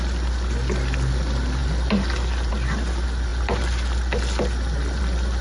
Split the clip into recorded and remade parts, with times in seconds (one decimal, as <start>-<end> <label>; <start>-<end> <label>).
0.0-5.4 recorded